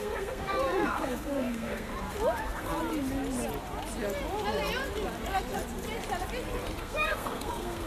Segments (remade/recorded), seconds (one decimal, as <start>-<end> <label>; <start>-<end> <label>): 0.0-1.9 remade; 1.9-2.4 recorded; 2.4-2.8 remade; 2.8-6.8 recorded; 6.8-7.9 remade